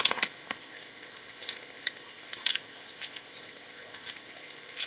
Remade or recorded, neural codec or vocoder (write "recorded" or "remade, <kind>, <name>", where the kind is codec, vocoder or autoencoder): remade, codec, ZipCodec